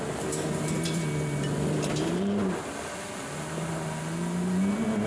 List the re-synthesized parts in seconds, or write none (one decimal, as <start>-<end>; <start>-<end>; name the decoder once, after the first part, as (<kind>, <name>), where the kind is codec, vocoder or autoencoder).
none